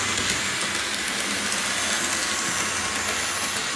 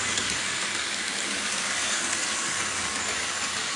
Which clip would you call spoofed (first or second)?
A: second